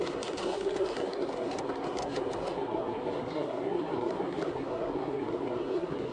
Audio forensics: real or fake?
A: fake